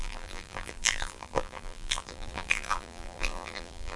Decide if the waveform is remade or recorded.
remade